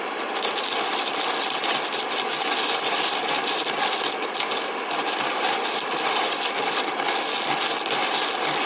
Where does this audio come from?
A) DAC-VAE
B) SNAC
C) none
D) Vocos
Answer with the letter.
C